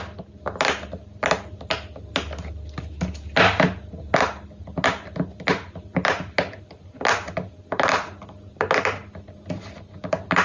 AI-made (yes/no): no